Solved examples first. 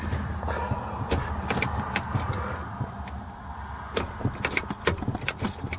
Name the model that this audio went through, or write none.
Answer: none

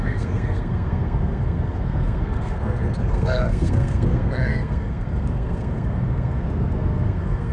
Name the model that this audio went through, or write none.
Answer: codec, SNAC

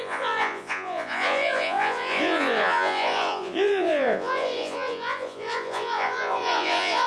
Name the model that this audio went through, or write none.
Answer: vocoder, Vocos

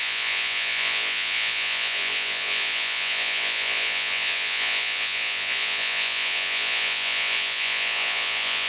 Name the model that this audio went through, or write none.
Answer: vocoder, Vocos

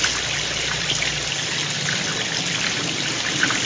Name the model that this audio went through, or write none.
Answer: none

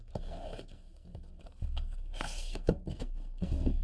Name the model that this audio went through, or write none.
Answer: codec, SNAC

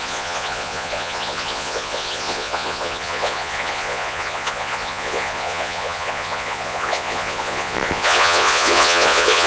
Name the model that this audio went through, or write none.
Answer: vocoder, Vocos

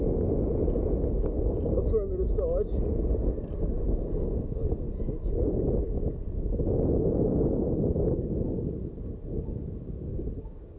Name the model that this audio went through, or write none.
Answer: none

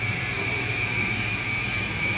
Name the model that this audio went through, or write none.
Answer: vocoder, BigVGAN v2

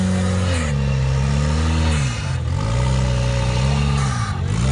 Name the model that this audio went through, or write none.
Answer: none